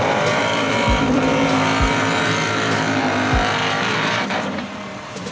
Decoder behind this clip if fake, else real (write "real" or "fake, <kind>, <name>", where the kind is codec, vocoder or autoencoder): fake, vocoder, BigVGAN v2